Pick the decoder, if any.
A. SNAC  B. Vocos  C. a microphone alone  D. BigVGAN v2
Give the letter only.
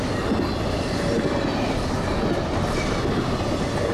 C